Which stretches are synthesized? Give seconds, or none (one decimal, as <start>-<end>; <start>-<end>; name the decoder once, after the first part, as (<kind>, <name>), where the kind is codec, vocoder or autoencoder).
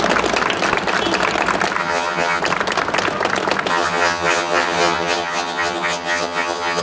1.8-2.4 (vocoder, HiFi-GAN); 3.7-6.8